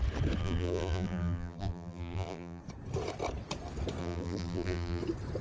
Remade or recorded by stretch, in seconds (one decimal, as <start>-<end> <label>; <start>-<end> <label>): 0.0-0.4 recorded; 0.4-2.6 remade; 2.6-4.0 recorded; 4.0-5.0 remade; 5.0-5.4 recorded